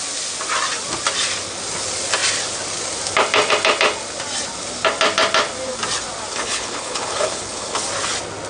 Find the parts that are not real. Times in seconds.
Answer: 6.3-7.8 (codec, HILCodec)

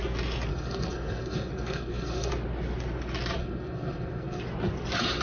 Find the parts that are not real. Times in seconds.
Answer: 0.5-2.3 (codec, SNAC); 3.4-4.4

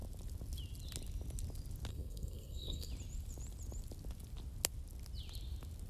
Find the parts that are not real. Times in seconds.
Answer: 1.9-2.9 (codec, SNAC)